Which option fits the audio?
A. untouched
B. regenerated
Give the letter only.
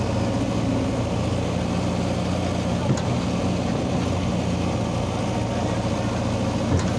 A